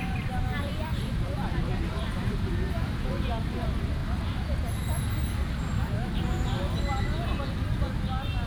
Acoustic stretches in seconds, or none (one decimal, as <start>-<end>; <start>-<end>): 0.0-0.7; 3.3-8.5